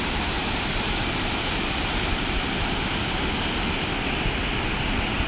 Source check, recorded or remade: recorded